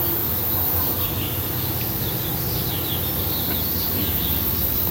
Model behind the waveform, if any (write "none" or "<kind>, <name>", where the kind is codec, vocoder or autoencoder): none